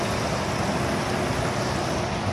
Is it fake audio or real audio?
real